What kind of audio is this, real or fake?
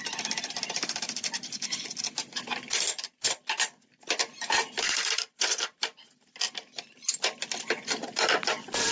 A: real